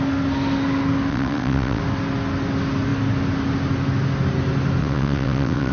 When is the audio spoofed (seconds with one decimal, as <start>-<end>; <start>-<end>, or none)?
1.1-1.8; 4.8-5.7